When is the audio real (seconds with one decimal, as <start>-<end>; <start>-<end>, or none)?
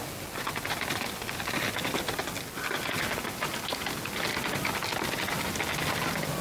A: 0.0-6.4